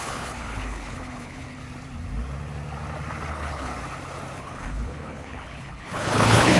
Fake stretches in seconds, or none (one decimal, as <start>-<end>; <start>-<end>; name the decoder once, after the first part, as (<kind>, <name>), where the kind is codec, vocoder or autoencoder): 0.0-1.6 (codec, HILCodec); 3.3-3.7; 4.4-6.6